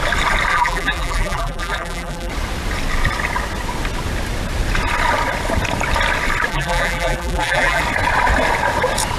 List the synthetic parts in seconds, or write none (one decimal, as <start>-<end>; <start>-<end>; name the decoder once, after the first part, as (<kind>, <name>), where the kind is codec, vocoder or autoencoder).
0.5-2.3 (vocoder, BigVGAN v2); 6.5-7.8